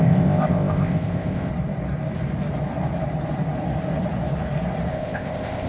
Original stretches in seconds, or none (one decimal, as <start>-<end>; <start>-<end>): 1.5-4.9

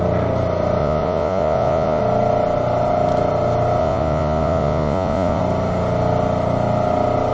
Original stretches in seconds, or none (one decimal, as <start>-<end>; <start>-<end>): 0.0-0.8; 2.0-3.8; 5.4-7.3

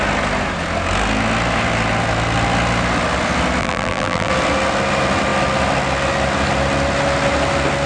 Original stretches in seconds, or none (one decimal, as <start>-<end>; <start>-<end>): 0.0-3.6; 4.3-7.9

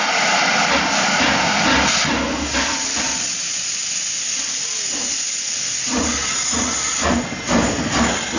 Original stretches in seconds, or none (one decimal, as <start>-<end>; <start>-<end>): 0.0-8.4